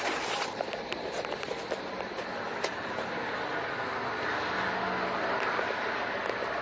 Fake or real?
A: real